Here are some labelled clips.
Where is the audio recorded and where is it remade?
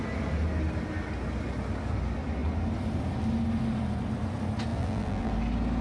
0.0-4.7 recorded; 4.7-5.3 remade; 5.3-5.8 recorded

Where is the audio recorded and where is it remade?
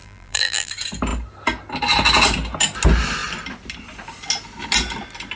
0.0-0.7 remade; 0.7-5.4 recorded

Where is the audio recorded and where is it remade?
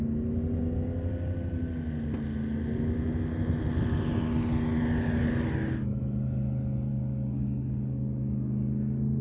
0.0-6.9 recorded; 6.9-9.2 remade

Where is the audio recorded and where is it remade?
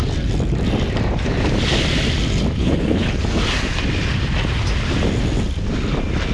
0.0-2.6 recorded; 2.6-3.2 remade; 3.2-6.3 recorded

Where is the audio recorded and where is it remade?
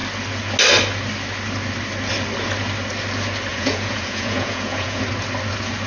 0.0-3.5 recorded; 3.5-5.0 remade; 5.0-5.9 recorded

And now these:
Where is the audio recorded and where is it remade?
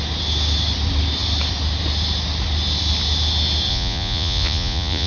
0.0-3.7 recorded; 3.7-5.1 remade